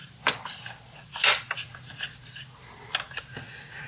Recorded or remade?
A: recorded